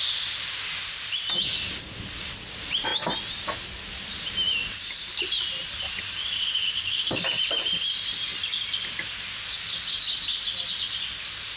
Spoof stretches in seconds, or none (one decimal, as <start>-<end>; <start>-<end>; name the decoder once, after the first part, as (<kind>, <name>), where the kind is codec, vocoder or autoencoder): 0.0-2.9 (vocoder, BigVGAN v2); 4.3-8.3; 11.2-11.6